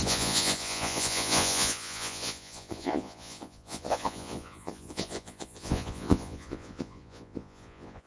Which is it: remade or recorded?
remade